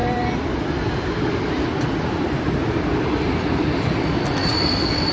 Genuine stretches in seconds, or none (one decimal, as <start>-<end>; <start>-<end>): 0.0-5.1